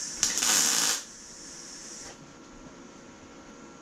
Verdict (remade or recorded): recorded